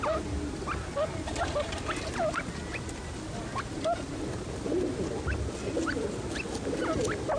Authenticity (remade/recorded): recorded